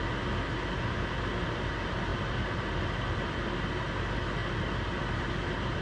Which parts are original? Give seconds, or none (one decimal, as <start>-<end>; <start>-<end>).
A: 0.0-2.1; 3.7-5.8

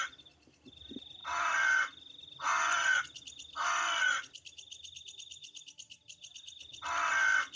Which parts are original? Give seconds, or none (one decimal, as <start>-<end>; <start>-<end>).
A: 0.0-1.2; 2.0-2.5; 3.0-7.6

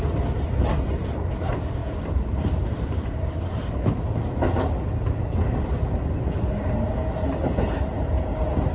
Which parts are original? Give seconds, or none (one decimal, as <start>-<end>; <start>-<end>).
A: 0.0-1.8; 3.7-8.7

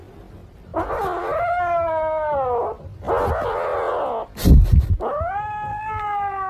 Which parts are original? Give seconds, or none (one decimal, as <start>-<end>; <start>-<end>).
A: 0.0-5.7